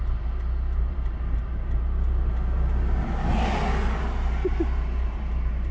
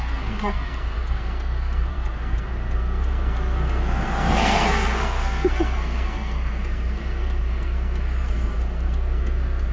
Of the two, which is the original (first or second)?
first